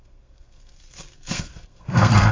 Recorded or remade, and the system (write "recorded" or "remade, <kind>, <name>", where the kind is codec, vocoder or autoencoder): remade, codec, SNAC